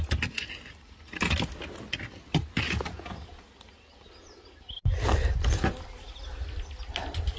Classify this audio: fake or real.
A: real